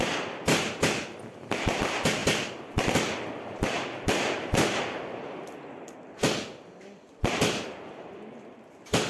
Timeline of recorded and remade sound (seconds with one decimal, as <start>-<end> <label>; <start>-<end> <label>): 0.0-9.1 recorded